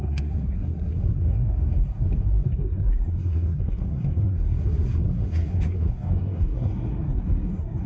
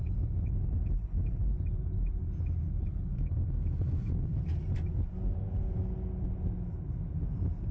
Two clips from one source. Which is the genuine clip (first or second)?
second